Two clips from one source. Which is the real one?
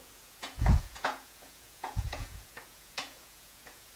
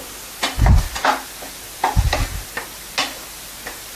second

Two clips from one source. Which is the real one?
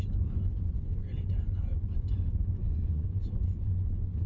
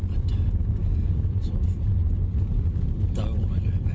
second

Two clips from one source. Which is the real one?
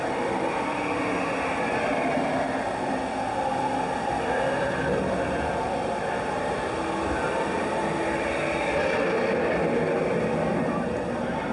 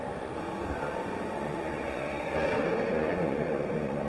first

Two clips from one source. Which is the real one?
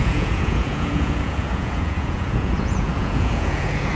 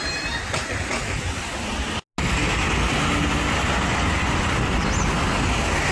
second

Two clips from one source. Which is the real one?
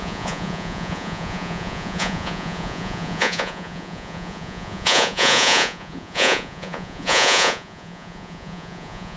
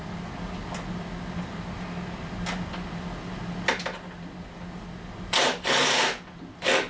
second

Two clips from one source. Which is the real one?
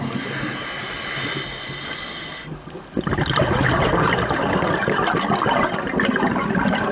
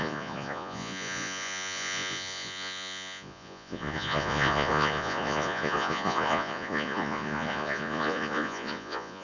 first